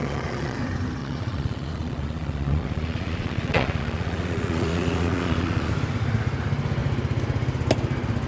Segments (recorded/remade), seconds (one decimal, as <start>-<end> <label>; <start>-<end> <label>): 0.0-0.6 remade; 0.6-1.0 recorded; 1.0-5.7 remade; 5.7-8.3 recorded